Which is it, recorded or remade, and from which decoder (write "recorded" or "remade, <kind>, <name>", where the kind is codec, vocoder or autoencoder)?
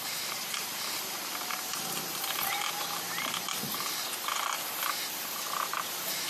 remade, vocoder, BigVGAN v2